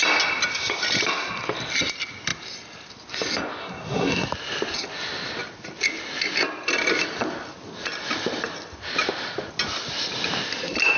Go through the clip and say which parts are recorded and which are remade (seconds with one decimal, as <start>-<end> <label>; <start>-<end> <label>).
0.0-3.6 recorded; 3.6-4.3 remade; 4.3-11.0 recorded